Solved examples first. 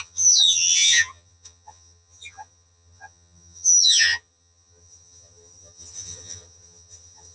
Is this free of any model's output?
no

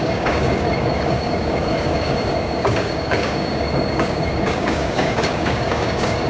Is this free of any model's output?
no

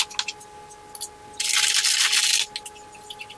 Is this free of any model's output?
yes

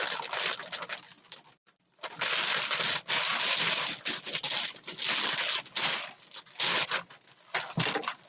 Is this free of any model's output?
yes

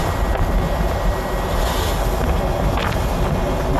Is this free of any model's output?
yes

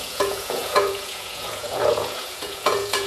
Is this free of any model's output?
no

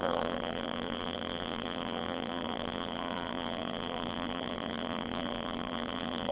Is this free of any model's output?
no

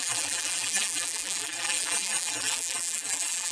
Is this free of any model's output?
no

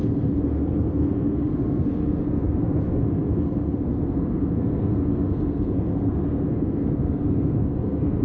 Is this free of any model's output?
no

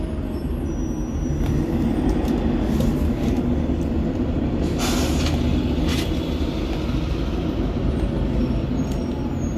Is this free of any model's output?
yes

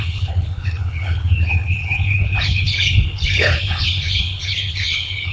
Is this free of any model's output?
no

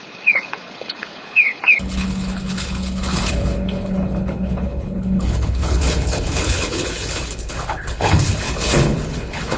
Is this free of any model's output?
no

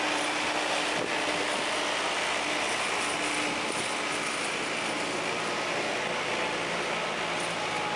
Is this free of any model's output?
yes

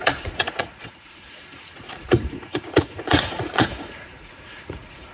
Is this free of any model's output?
no